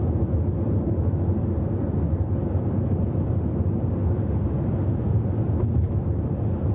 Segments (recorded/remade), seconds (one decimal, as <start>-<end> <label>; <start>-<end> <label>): 0.0-6.7 recorded